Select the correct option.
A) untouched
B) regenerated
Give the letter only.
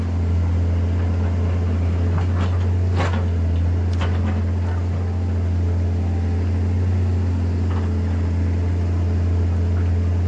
A